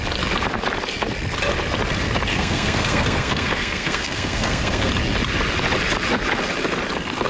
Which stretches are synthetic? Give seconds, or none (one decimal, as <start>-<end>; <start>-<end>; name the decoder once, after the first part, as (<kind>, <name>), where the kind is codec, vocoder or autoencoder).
2.3-4.9 (codec, SNAC)